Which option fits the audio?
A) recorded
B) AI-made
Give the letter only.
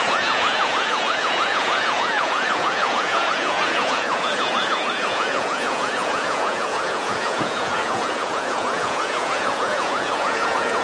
B